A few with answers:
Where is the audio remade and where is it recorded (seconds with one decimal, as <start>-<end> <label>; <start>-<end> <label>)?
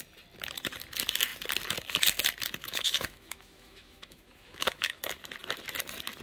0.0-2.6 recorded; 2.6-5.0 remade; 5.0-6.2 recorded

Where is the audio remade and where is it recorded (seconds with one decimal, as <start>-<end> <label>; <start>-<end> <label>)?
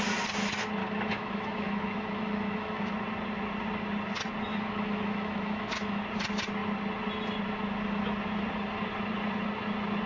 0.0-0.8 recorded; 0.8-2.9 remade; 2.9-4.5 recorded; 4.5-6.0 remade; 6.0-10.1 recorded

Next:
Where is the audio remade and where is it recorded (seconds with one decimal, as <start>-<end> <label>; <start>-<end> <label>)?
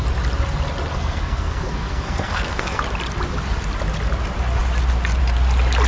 0.0-0.9 recorded; 0.9-2.8 remade; 2.8-5.9 recorded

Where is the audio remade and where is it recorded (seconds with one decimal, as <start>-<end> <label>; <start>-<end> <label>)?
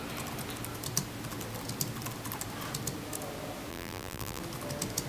0.0-3.7 recorded; 3.7-4.4 remade; 4.4-5.1 recorded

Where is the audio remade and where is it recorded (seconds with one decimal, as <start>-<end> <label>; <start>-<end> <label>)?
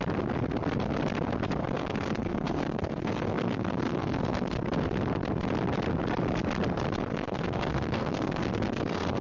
0.0-1.6 recorded; 1.6-4.6 remade; 4.6-7.1 recorded; 7.1-9.2 remade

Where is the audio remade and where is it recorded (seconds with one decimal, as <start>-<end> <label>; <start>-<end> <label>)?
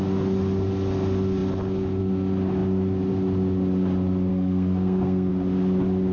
0.0-4.3 recorded; 4.3-5.3 remade; 5.3-6.1 recorded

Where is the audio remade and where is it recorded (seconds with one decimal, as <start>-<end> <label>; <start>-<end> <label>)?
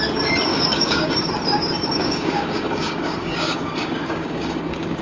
0.0-0.5 recorded; 0.5-1.1 remade; 1.1-2.0 recorded; 2.0-5.0 remade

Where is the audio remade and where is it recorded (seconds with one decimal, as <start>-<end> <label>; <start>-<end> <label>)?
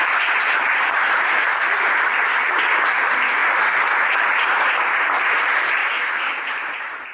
0.0-5.8 recorded; 5.8-6.5 remade; 6.5-7.1 recorded